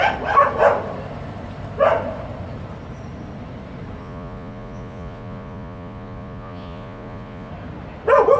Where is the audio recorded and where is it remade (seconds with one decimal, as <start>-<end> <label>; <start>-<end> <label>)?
0.0-4.0 recorded; 4.0-7.5 remade; 7.5-8.4 recorded